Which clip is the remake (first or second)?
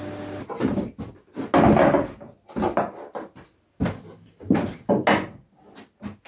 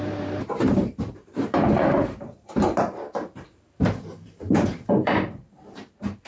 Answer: second